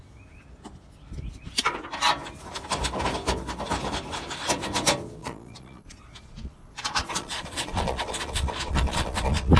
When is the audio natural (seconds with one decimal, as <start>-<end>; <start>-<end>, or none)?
0.0-5.2